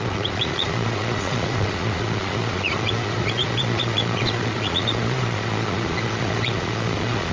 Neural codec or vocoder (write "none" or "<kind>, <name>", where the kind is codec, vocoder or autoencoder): vocoder, Vocos